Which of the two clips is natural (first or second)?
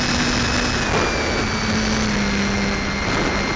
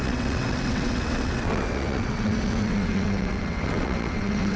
first